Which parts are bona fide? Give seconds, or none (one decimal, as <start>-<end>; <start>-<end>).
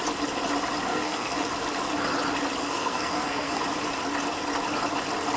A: 0.0-0.9; 1.5-2.6; 3.6-5.4